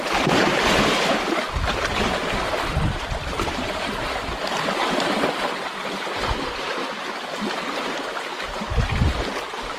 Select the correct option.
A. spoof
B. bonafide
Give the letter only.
B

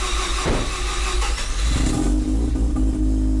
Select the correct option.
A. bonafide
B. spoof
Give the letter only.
A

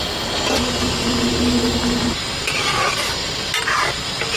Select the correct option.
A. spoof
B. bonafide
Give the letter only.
B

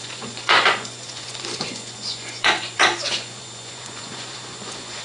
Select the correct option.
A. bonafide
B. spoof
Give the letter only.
B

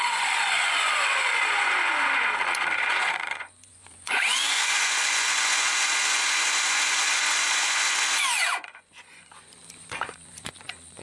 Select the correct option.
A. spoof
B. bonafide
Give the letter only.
A